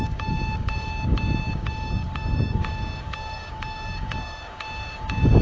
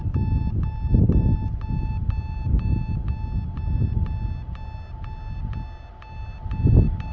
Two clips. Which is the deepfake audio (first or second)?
first